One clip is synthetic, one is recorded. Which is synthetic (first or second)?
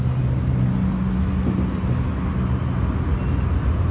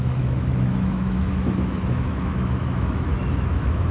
second